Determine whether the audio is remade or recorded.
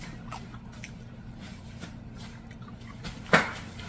recorded